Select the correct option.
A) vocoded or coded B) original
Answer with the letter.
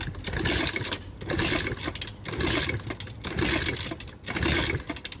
B